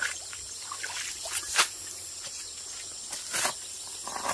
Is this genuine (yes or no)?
yes